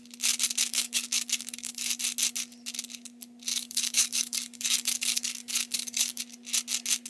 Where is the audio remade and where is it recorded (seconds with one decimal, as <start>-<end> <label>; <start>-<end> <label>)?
0.0-0.7 recorded; 0.7-2.0 remade; 2.0-3.5 recorded; 3.5-6.2 remade; 6.2-7.1 recorded